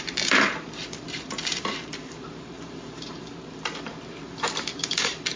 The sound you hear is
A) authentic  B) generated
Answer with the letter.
B